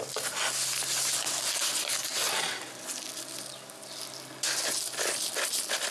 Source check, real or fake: real